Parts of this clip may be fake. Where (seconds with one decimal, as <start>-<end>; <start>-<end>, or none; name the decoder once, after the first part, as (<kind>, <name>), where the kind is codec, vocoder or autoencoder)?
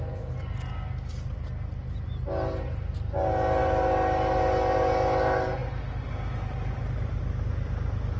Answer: none